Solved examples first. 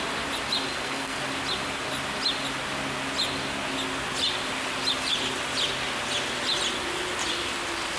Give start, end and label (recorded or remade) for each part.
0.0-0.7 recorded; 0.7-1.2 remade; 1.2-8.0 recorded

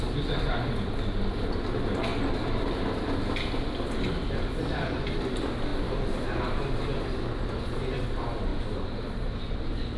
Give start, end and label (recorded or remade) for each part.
0.0-10.0 recorded

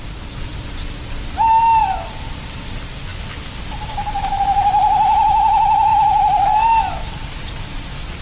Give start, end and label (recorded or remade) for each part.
0.0-8.2 recorded

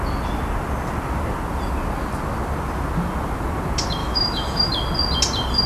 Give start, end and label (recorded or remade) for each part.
0.0-4.0 recorded; 4.0-4.7 remade; 4.7-5.7 recorded

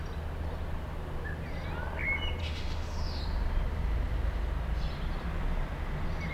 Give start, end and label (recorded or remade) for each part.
0.0-2.4 recorded; 2.4-3.2 remade; 3.2-6.3 recorded

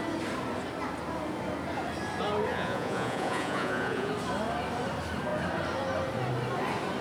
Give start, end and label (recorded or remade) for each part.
0.0-2.5 recorded; 2.5-4.1 remade; 4.1-7.0 recorded

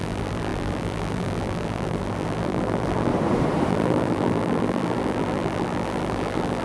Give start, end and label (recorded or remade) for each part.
0.0-3.1 remade; 3.1-3.7 recorded; 3.7-6.6 remade

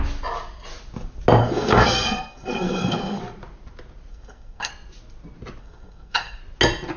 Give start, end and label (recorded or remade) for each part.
0.0-1.4 recorded; 1.4-3.2 remade; 3.2-4.1 recorded; 4.1-4.7 remade; 4.7-5.6 recorded; 5.6-6.4 remade; 6.4-7.0 recorded